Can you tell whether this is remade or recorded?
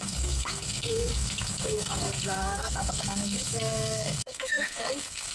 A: remade